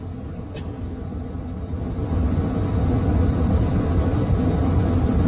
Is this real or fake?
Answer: real